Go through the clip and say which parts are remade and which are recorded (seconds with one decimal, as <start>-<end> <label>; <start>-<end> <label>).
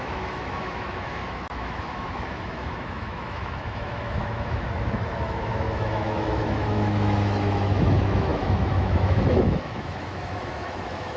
0.0-11.2 remade